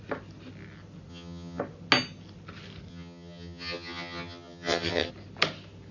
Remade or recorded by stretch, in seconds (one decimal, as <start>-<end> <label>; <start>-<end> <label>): 0.0-1.1 recorded; 1.1-1.6 remade; 1.6-2.9 recorded; 2.9-5.1 remade; 5.1-5.9 recorded

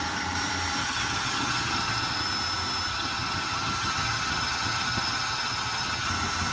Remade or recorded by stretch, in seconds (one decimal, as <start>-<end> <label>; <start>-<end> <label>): 0.0-0.8 recorded; 0.8-2.2 remade; 2.2-2.9 recorded; 2.9-6.1 remade; 6.1-6.5 recorded